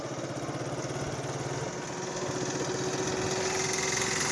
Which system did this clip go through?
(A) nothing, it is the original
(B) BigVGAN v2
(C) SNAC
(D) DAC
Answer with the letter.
A